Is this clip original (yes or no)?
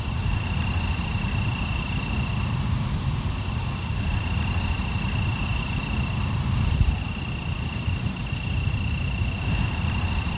no